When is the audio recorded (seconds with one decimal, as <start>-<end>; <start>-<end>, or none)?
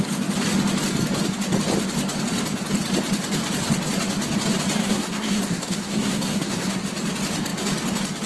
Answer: 0.0-4.8; 6.8-8.3